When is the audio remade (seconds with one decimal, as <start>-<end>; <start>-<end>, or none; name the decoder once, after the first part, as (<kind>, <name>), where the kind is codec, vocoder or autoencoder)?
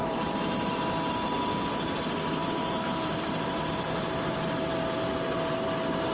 0.0-0.8 (vocoder, BigVGAN v2); 2.4-4.7